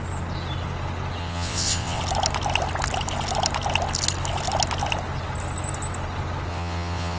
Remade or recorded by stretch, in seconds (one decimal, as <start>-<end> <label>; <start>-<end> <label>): 0.0-1.2 recorded; 1.2-2.0 remade; 2.0-6.5 recorded; 6.5-7.2 remade